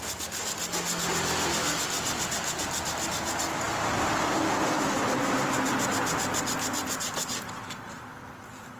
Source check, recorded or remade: recorded